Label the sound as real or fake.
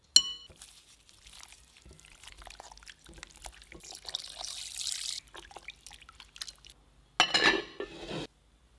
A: real